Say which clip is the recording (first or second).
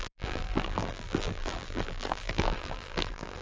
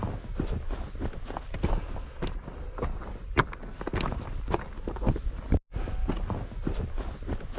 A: second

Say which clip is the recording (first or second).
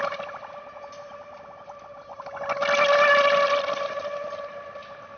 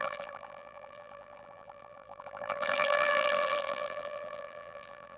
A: first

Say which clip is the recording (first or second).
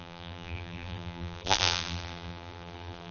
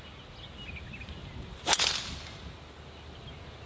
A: second